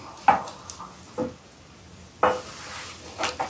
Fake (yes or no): no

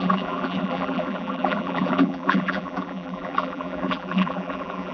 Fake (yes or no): yes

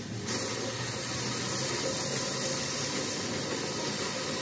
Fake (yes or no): no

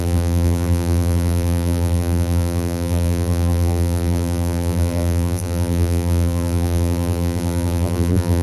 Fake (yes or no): yes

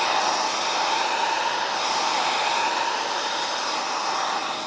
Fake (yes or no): no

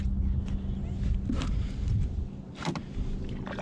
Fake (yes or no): no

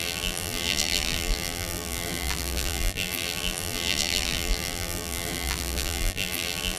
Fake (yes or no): yes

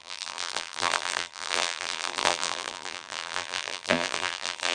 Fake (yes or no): yes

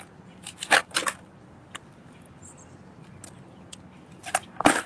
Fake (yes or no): no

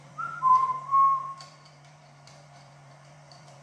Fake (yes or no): yes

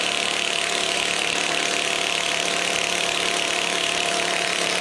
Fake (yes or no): yes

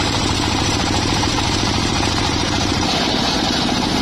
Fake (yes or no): yes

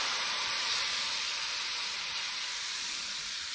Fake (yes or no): yes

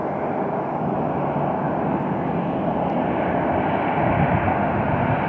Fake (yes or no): no